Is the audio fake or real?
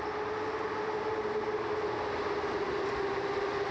real